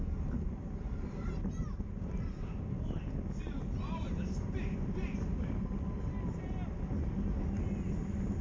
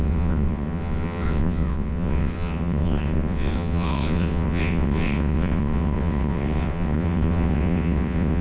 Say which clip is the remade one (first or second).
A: second